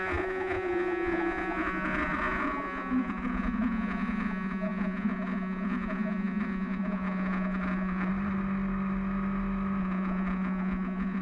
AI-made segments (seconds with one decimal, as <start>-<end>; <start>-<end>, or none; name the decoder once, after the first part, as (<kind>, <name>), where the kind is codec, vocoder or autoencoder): 0.0-8.1 (vocoder, Vocos); 9.8-11.2